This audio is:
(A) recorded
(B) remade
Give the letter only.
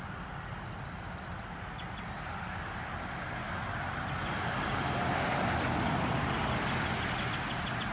A